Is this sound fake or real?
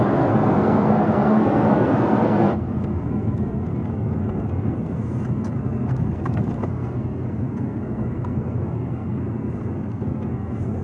fake